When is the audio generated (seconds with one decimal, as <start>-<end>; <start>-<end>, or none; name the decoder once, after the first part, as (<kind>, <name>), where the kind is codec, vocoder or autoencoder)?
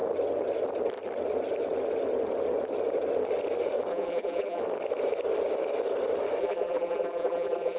3.9-4.6 (vocoder, BigVGAN v2); 6.4-7.8